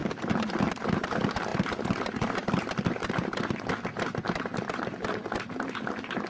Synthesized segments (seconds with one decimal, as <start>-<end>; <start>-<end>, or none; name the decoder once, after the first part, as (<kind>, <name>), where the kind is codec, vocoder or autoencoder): none

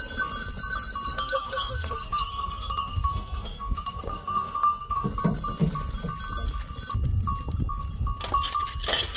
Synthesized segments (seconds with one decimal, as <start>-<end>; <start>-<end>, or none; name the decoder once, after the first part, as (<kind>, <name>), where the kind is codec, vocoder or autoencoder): 1.1-5.1 (codec, SNAC)